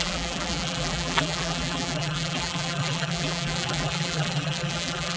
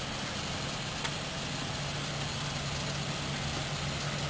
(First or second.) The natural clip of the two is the second